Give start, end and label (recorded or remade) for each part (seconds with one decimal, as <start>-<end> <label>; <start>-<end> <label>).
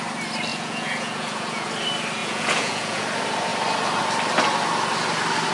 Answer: 0.0-0.5 recorded; 0.5-1.7 remade; 1.7-2.2 recorded; 2.2-3.0 remade; 3.0-5.5 recorded